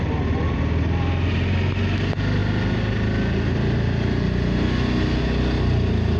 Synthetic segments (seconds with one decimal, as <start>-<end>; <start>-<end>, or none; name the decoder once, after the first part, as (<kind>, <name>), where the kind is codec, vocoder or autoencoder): none